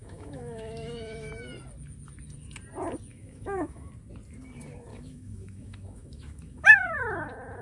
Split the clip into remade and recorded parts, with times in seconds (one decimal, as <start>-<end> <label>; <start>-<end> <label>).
0.0-1.3 remade; 1.3-3.1 recorded; 3.1-3.9 remade; 3.9-4.9 recorded; 4.9-7.0 remade; 7.0-7.6 recorded